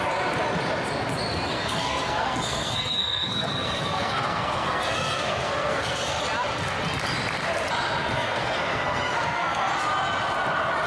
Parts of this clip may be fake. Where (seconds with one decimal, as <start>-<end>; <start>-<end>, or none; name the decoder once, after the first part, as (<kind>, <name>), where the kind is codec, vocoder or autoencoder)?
1.5-6.2 (codec, SNAC); 8.0-9.7